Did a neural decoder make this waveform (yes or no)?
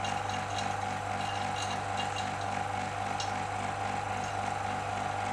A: no